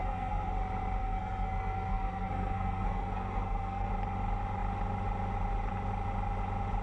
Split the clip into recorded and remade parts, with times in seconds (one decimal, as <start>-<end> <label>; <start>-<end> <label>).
0.0-0.5 remade; 0.5-1.0 recorded; 1.0-3.9 remade; 3.9-6.8 recorded